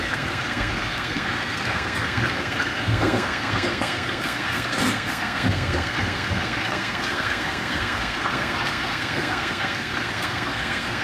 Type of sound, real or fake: fake